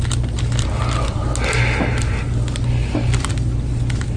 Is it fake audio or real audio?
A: real